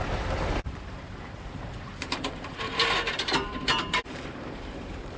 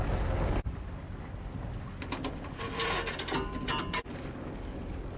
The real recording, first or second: second